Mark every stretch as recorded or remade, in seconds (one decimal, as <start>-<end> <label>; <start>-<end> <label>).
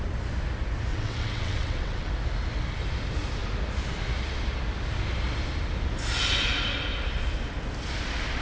0.0-0.9 recorded; 0.9-2.1 remade; 2.1-8.4 recorded